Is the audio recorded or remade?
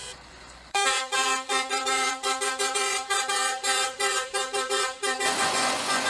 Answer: remade